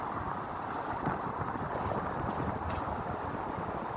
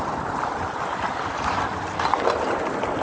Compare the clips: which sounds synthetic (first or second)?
first